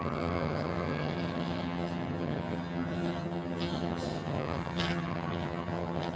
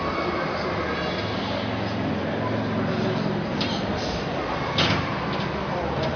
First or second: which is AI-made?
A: first